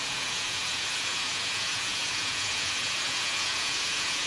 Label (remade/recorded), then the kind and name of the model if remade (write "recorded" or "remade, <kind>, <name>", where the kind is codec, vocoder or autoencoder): remade, vocoder, Vocos